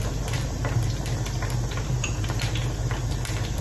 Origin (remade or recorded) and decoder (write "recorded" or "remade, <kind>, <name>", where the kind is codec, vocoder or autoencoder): recorded